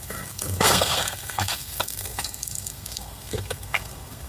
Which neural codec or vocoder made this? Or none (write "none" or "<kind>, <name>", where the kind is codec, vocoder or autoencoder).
codec, SNAC